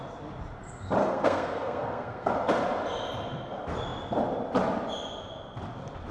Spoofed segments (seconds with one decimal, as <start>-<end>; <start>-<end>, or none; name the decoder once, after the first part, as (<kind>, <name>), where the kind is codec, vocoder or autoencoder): 1.0-2.3 (codec, SNAC)